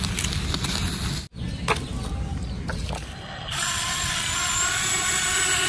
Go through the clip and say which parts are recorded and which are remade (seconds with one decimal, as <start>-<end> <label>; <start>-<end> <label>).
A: 0.0-1.3 recorded; 1.3-1.9 remade; 1.9-5.7 recorded